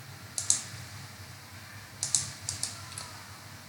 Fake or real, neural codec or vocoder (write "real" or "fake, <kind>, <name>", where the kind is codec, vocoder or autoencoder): real